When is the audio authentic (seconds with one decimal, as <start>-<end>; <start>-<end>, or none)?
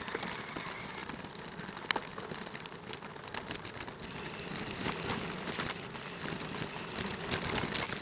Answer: 0.0-1.0; 3.1-8.0